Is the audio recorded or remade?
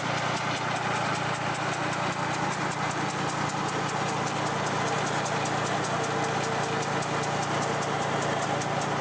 recorded